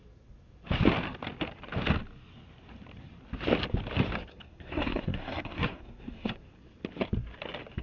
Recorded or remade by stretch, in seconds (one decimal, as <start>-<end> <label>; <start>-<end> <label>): 0.0-4.2 recorded; 4.2-6.5 remade; 6.5-7.8 recorded